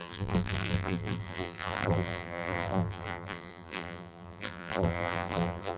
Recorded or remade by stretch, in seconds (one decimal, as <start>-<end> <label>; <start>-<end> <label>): 0.0-5.8 remade

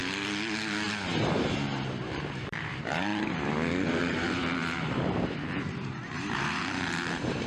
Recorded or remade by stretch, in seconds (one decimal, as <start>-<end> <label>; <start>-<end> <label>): 0.0-1.2 recorded; 1.2-3.1 remade; 3.1-4.0 recorded; 4.0-7.5 remade

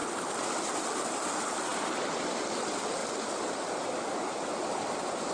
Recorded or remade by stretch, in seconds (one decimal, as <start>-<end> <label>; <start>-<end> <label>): 0.0-1.7 recorded; 1.7-2.4 remade; 2.4-3.0 recorded; 3.0-5.3 remade

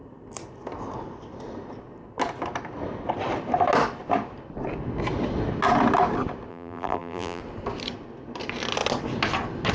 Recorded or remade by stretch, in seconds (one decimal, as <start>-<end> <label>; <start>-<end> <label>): 0.0-6.5 recorded; 6.5-7.4 remade; 7.4-9.7 recorded